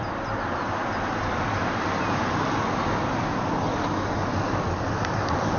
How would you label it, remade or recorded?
recorded